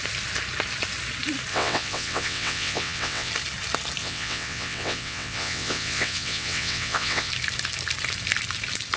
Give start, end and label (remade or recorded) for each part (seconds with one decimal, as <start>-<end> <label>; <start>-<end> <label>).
0.0-1.5 recorded; 1.5-3.3 remade; 3.3-4.0 recorded; 4.0-7.3 remade; 7.3-9.0 recorded